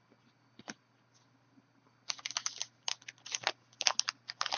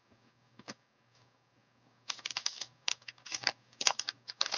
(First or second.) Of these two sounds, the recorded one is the first